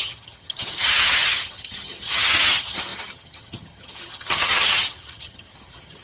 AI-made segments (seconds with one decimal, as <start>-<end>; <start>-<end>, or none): 0.0-6.0